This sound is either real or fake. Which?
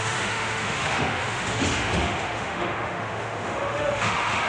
fake